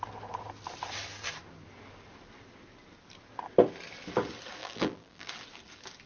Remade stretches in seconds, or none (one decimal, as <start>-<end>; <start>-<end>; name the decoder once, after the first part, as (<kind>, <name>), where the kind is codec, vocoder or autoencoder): 4.6-5.3 (vocoder, BigVGAN v2)